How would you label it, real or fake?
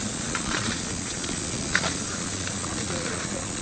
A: fake